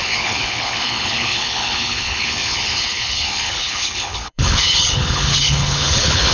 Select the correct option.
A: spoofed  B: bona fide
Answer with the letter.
A